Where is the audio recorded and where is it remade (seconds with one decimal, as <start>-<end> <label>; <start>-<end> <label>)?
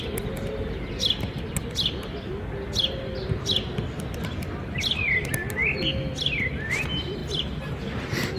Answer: 0.0-8.4 recorded